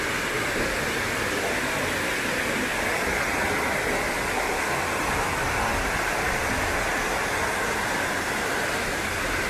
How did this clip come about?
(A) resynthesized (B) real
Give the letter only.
B